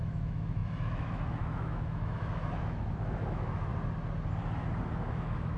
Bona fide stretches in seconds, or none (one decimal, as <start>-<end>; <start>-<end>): 3.7-5.1